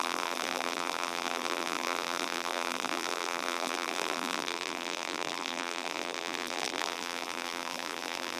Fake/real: fake